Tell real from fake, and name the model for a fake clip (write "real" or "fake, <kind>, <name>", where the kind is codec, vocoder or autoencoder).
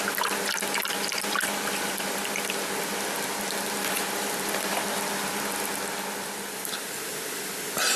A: real